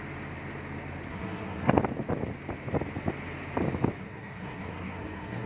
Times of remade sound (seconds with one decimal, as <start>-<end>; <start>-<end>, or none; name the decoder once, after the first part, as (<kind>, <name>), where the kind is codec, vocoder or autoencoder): 1.1-1.7 (codec, SNAC); 4.0-5.5